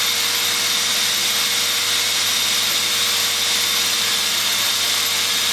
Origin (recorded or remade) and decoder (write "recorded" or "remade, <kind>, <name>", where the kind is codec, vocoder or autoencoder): recorded